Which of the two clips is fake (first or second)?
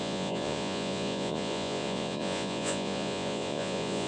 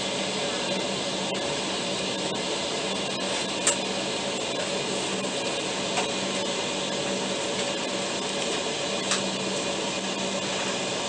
first